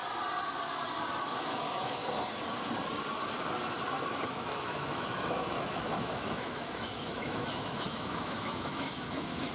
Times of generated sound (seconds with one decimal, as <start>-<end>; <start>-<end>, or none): 1.2-2.0; 4.3-9.5